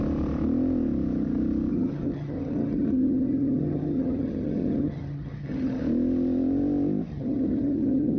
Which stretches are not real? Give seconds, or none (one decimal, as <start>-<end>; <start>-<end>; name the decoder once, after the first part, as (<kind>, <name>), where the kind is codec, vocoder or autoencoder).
1.7-5.8 (vocoder, HiFi-GAN); 7.1-8.2